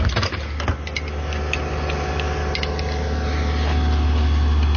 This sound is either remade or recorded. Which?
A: recorded